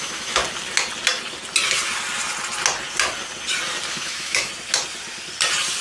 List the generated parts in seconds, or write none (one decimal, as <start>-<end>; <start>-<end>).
0.0-0.4; 3.9-4.5

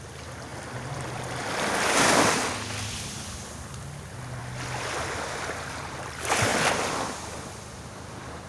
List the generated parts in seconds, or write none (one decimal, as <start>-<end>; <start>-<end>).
none